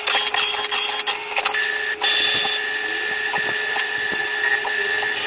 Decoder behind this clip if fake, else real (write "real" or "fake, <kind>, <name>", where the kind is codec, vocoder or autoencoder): real